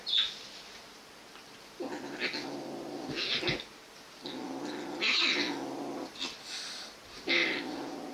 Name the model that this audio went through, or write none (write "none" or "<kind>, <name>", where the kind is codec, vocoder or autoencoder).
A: none